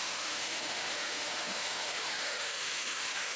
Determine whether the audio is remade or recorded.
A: remade